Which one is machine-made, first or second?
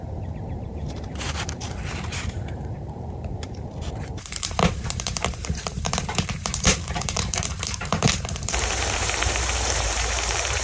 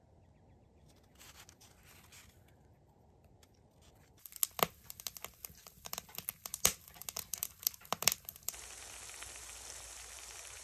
first